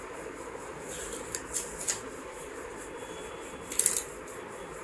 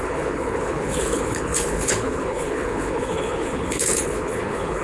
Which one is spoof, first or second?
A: second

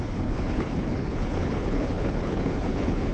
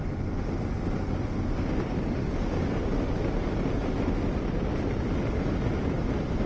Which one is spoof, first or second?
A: first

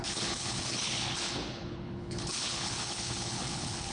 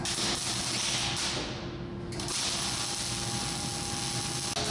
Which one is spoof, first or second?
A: first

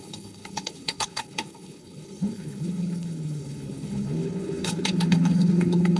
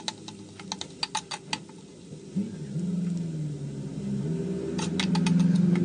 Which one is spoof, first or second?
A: first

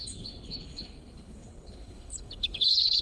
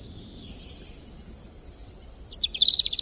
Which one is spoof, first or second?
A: first